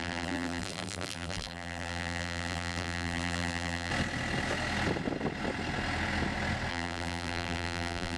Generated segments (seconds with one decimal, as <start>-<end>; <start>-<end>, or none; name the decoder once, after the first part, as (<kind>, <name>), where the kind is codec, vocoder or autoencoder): 0.0-3.9 (vocoder, BigVGAN v2); 6.7-8.2